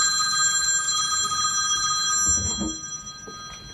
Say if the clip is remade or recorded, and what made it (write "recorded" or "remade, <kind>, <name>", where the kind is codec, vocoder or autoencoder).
recorded